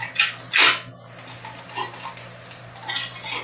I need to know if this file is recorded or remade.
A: recorded